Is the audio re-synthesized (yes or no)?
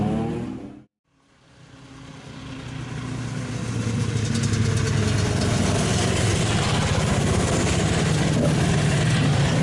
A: no